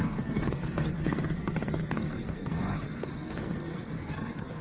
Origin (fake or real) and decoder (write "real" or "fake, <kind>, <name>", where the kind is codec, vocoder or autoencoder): fake, codec, SNAC